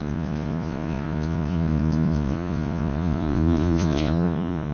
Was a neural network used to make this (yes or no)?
yes